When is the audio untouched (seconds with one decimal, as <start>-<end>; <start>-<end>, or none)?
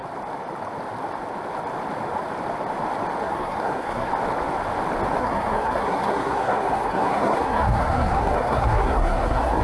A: 0.0-3.2; 4.1-5.2